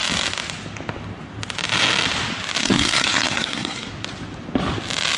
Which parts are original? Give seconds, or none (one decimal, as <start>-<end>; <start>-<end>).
0.0-2.6; 3.9-5.2